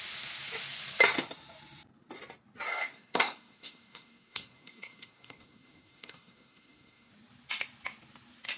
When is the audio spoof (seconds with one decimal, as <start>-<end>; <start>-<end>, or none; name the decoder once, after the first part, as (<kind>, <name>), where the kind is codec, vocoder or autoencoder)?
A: 2.7-7.1 (codec, SNAC)